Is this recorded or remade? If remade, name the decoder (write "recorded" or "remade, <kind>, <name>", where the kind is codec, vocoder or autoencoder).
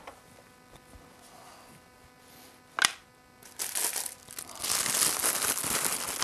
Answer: recorded